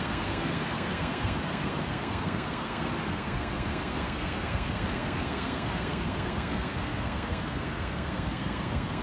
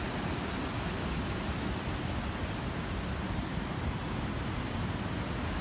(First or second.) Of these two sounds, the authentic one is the second